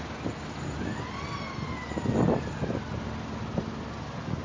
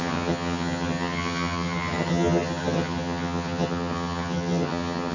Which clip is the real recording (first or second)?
first